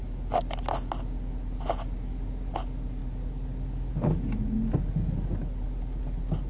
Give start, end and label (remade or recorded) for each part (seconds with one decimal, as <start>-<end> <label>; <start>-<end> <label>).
0.0-6.5 recorded

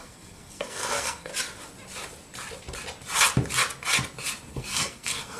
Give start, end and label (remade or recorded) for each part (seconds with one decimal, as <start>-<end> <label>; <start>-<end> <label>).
0.0-1.3 remade; 1.3-4.5 recorded; 4.5-5.4 remade

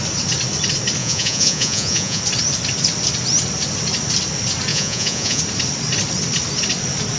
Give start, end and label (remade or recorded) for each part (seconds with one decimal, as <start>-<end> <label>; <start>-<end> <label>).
0.0-1.0 recorded; 1.0-2.2 remade; 2.2-4.7 recorded; 4.7-5.4 remade; 5.4-7.2 recorded

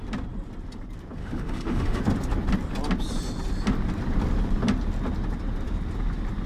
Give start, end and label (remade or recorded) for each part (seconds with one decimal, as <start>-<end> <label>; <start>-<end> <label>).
0.0-1.2 recorded; 1.2-2.0 remade; 2.0-6.5 recorded

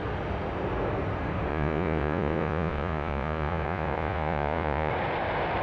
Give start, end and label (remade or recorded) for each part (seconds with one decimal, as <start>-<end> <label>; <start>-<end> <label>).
0.0-1.5 recorded; 1.5-4.9 remade; 4.9-5.6 recorded